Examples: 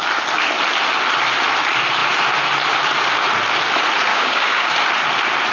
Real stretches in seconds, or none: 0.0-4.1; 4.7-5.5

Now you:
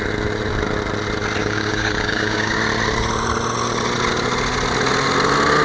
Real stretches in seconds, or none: 0.0-1.4; 2.6-5.6

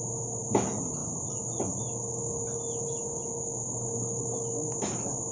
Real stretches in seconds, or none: 0.0-5.3

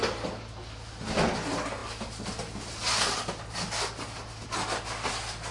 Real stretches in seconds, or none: 0.0-5.5

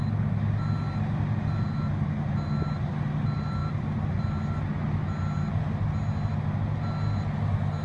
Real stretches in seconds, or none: 0.0-7.8

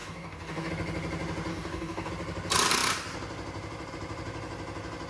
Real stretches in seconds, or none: 0.7-1.5; 2.1-5.1